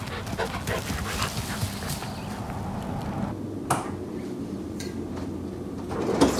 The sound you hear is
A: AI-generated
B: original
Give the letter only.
B